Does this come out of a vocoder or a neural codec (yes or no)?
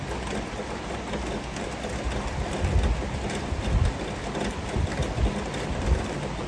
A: no